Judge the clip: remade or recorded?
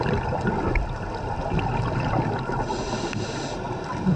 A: recorded